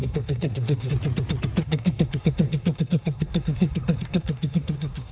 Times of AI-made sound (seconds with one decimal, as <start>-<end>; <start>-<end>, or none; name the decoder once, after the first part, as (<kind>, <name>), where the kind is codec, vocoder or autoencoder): 0.0-0.9 (codec, SNAC); 1.6-5.1